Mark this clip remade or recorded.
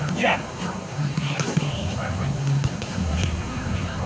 remade